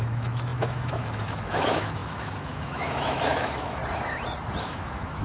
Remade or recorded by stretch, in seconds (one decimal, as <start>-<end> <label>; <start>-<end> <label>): 0.0-3.8 remade; 3.8-4.6 recorded; 4.6-5.2 remade